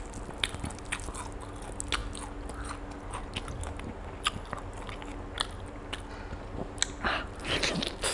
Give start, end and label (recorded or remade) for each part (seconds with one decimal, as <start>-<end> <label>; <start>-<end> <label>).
0.0-8.1 recorded